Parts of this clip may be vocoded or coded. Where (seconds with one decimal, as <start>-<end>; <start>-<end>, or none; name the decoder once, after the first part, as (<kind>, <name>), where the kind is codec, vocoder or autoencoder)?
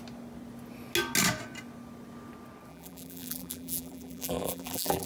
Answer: 2.7-5.1 (vocoder, BigVGAN v2)